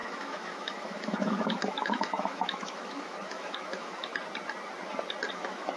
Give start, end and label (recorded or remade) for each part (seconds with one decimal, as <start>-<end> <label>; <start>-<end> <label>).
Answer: 0.0-4.1 remade; 4.1-5.3 recorded; 5.3-5.8 remade